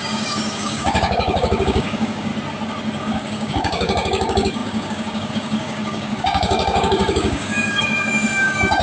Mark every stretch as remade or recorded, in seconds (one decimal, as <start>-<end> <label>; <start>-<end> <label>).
0.0-2.3 remade; 2.3-3.0 recorded; 3.0-8.8 remade